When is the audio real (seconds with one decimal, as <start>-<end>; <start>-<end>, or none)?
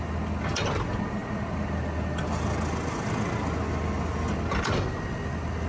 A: 0.0-5.7